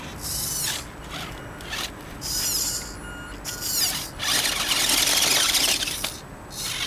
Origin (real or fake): real